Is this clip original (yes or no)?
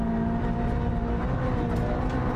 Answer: yes